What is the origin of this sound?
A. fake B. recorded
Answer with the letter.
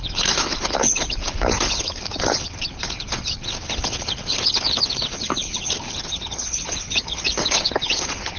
A